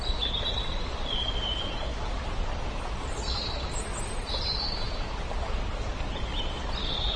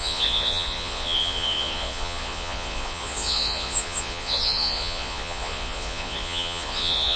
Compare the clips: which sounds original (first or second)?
first